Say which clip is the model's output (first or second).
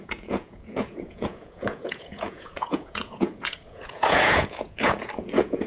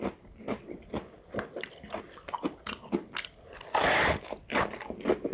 first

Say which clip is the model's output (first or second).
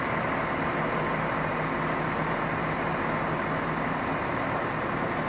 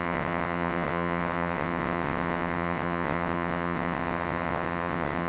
second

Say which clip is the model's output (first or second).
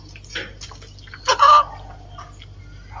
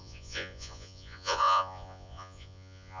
second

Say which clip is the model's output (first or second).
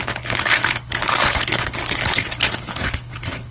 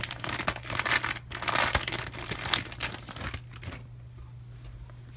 first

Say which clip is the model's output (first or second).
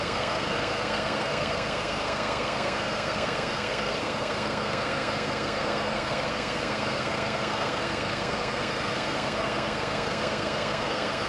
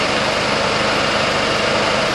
first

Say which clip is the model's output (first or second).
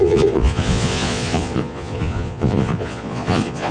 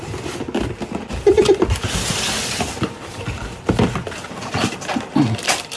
first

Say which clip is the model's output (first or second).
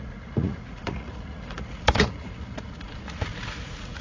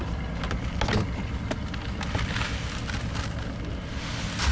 first